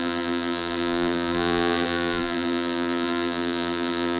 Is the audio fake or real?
fake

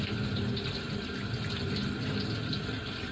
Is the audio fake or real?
real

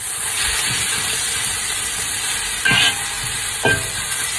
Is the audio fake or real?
real